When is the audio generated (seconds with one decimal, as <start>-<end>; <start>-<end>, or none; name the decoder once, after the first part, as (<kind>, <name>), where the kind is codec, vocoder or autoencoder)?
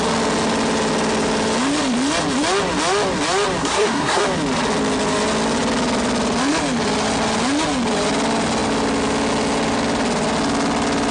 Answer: 3.6-4.2 (codec, SNAC)